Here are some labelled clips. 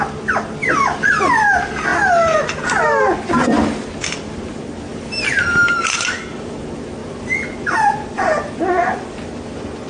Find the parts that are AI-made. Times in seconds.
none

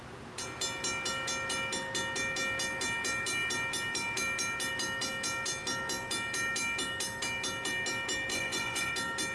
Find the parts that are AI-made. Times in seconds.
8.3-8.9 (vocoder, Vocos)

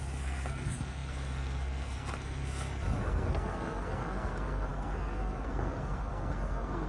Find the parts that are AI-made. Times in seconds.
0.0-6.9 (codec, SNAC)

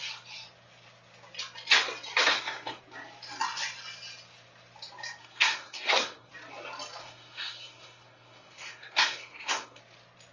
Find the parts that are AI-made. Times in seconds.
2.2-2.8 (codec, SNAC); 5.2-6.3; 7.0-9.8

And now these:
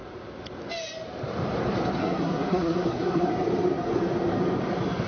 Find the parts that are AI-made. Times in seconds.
2.0-3.3 (codec, SNAC)